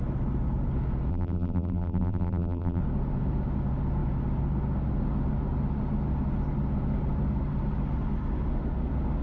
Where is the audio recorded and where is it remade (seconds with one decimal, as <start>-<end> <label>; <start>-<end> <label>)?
0.0-1.1 recorded; 1.1-2.8 remade; 2.8-9.2 recorded